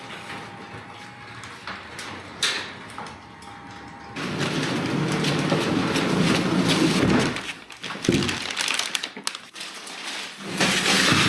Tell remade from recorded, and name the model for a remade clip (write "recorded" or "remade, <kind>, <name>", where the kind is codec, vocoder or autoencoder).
recorded